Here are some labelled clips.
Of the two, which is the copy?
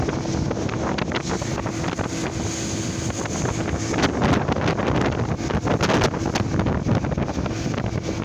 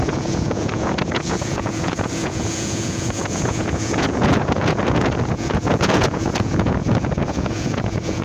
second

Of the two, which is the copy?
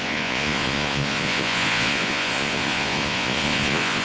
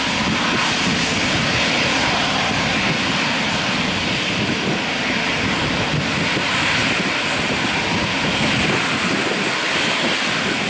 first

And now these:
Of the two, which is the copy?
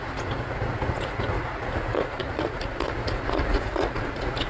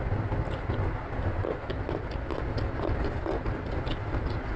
first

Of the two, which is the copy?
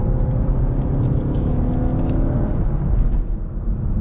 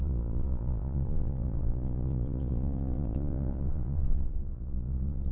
second